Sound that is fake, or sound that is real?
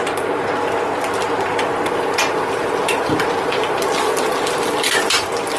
real